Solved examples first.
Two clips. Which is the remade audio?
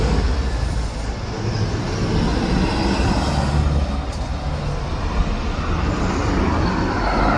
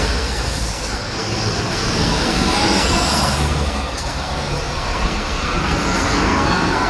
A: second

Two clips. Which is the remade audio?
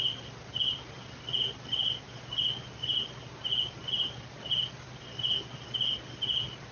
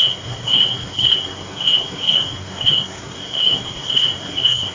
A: second